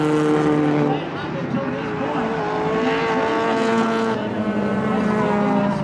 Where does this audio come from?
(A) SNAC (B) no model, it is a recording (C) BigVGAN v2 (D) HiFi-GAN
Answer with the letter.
B